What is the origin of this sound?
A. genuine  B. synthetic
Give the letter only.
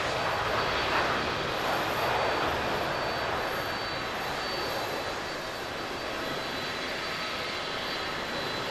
A